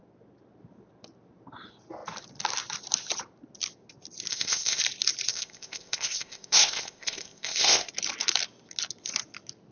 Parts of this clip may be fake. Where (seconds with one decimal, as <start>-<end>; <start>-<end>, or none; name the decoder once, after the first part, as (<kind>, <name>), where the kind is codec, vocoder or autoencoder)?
4.3-4.8 (codec, ZipCodec); 5.3-7.9